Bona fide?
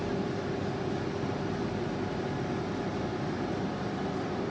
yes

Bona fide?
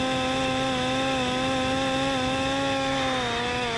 yes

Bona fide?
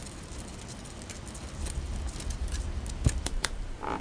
yes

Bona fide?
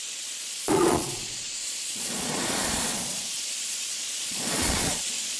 no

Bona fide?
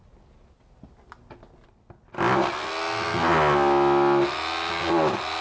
yes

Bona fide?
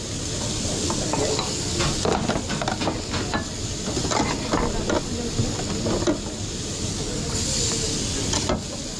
yes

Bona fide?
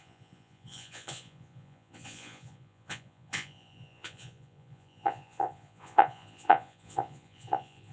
no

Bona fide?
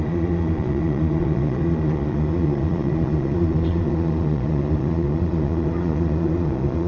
no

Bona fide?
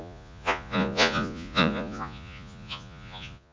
no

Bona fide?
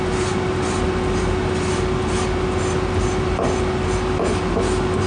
yes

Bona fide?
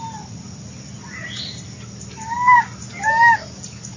yes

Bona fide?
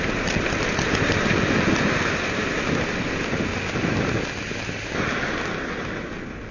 yes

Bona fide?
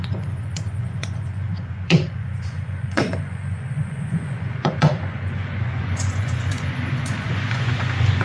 no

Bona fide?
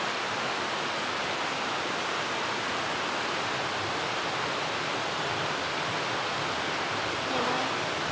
yes